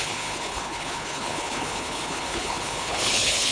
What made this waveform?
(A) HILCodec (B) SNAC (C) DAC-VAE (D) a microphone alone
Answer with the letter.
A